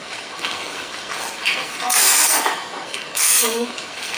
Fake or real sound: fake